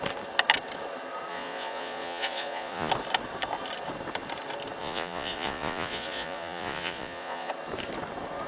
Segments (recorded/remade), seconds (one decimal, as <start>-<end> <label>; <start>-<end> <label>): 0.0-1.3 recorded; 1.3-2.9 remade; 2.9-4.8 recorded; 4.8-7.5 remade; 7.5-8.5 recorded